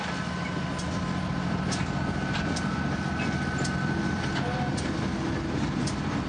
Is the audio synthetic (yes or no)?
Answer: no